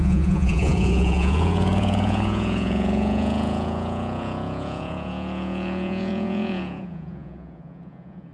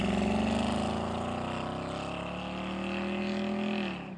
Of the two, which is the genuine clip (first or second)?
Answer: second